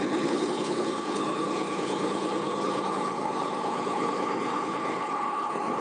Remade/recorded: remade